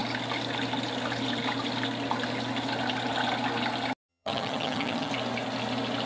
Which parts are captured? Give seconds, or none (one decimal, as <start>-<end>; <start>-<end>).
0.0-4.1; 5.1-6.1